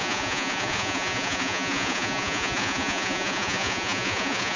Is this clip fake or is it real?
fake